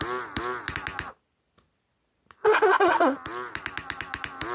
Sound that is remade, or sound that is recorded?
recorded